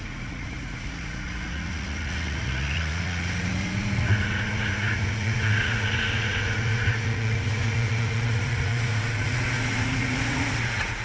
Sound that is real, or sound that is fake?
fake